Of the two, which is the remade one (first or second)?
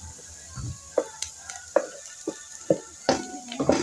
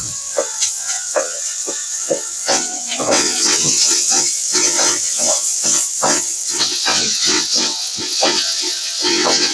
second